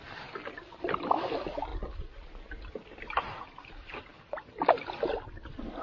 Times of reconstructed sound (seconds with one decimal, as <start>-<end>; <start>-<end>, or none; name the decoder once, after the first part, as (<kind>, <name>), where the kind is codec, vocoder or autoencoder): 0.0-5.8 (vocoder, BigVGAN v2)